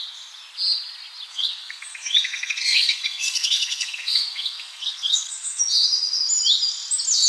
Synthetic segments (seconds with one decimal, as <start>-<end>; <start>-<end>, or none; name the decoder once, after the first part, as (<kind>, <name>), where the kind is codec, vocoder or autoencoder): 1.3-5.6 (codec, SNAC)